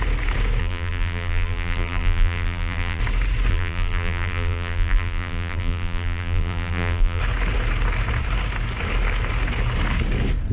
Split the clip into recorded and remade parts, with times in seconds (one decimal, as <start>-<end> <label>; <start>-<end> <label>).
0.0-0.6 recorded; 0.6-3.0 remade; 3.0-3.5 recorded; 3.5-7.2 remade; 7.2-10.5 recorded